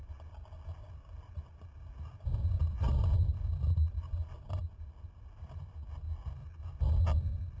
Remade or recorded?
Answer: recorded